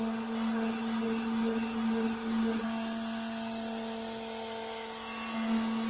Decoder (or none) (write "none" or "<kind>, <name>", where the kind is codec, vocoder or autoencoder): none